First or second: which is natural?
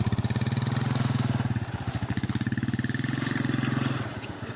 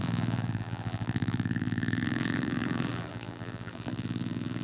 first